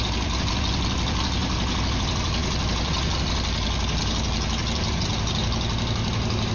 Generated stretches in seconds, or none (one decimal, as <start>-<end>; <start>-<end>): none